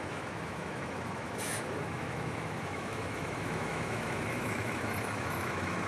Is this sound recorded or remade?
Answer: remade